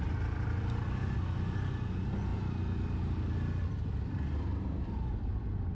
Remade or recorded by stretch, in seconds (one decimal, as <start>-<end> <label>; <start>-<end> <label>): 0.0-5.7 recorded